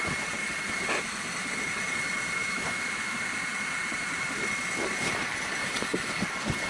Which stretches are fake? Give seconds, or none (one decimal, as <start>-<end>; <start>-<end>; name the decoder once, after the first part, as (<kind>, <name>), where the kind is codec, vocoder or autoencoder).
2.4-3.1 (autoencoder, DAC-VAE)